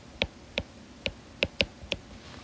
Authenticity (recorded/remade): remade